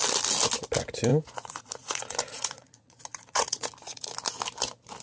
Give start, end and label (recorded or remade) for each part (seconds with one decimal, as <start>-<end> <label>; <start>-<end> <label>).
0.0-1.1 recorded; 1.1-4.1 remade; 4.1-5.0 recorded